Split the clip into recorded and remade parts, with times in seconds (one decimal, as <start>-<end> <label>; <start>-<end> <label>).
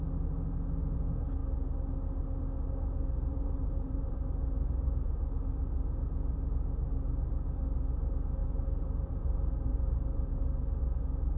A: 0.0-3.3 recorded; 3.3-5.1 remade; 5.1-8.4 recorded; 8.4-10.8 remade; 10.8-11.4 recorded